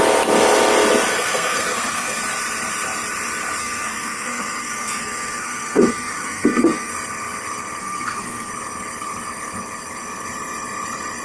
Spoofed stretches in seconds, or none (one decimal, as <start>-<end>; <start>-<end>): 1.1-2.2; 3.6-6.9; 7.8-8.5